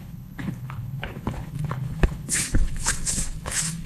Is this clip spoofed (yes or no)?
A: yes